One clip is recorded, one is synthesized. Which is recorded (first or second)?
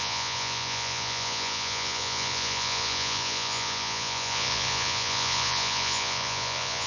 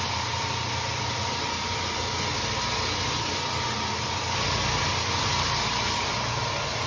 second